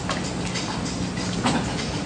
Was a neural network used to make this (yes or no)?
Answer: no